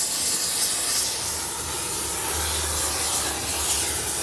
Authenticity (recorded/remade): recorded